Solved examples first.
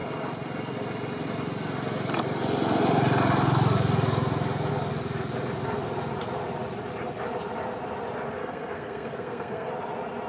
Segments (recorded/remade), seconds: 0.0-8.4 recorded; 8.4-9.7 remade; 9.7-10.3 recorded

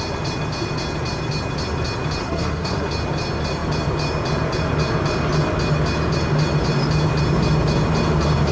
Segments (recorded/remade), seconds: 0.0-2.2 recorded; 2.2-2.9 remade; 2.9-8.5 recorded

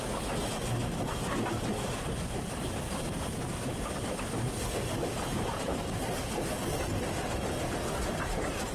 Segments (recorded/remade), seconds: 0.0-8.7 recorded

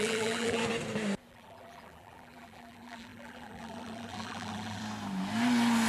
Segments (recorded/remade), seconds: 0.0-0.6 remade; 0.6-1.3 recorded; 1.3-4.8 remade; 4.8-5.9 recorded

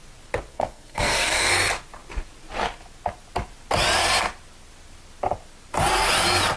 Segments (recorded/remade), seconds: 0.0-0.5 recorded; 0.5-1.5 remade; 1.5-6.6 recorded

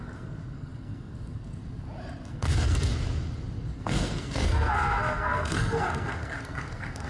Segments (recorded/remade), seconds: 0.0-1.6 remade; 1.6-2.3 recorded; 2.3-2.9 remade; 2.9-3.8 recorded; 3.8-7.1 remade

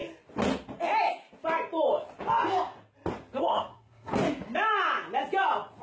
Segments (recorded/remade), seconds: 0.0-3.4 recorded; 3.4-4.1 remade; 4.1-5.8 recorded

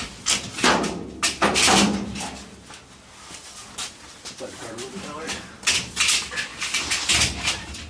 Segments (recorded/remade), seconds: 0.0-7.9 recorded